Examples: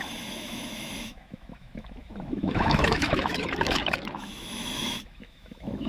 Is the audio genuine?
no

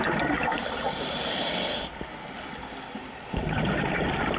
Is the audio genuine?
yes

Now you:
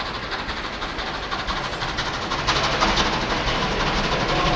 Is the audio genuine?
yes